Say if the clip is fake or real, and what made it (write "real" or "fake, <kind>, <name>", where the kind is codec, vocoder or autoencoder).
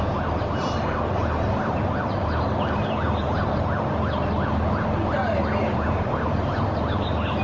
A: real